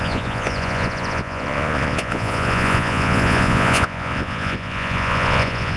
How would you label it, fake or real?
fake